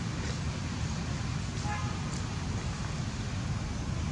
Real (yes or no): yes